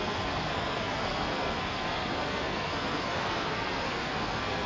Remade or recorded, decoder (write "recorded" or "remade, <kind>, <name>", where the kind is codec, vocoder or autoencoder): remade, codec, SNAC